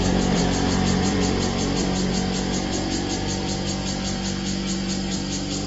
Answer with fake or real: fake